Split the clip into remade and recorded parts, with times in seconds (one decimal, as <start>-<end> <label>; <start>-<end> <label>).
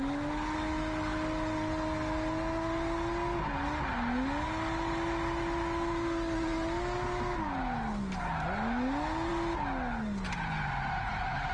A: 0.0-11.5 recorded